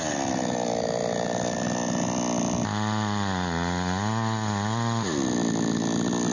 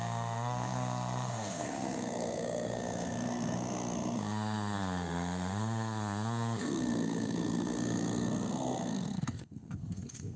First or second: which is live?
first